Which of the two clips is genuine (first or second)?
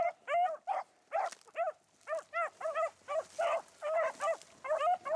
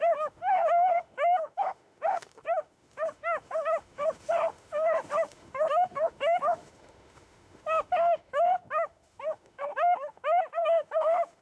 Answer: first